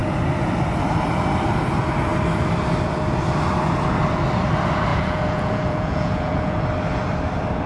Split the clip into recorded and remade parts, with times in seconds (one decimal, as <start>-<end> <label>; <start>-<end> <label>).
0.0-4.9 recorded; 4.9-6.6 remade; 6.6-7.7 recorded